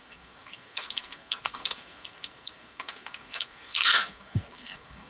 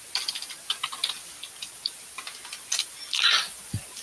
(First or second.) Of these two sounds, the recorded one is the second